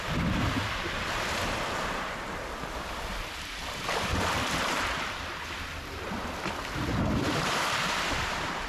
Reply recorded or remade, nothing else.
remade